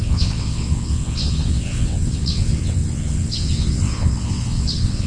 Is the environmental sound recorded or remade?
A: remade